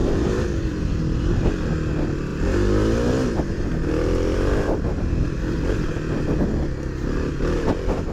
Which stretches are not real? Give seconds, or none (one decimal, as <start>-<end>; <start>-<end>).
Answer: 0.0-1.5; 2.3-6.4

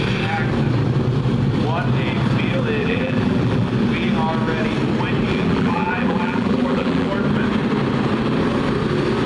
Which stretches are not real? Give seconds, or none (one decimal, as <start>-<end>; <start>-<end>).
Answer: 2.8-3.7; 5.3-7.1

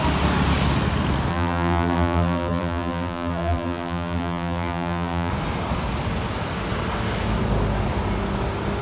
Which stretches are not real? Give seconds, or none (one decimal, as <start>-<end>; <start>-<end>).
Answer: 1.3-5.3

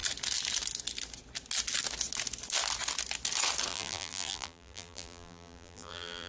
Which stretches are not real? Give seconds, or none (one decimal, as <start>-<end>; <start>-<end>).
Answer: 3.7-6.3

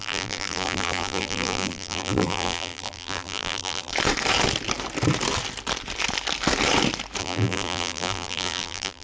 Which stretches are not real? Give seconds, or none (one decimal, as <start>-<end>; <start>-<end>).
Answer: 0.0-3.9; 7.2-9.0

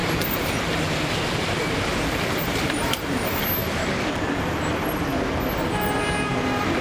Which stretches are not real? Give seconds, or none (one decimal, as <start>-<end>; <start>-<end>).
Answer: 0.0-0.8; 1.9-3.4

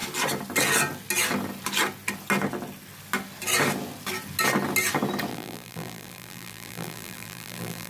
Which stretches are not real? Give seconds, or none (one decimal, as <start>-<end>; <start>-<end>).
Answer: 5.3-7.9